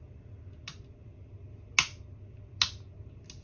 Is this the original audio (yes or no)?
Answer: yes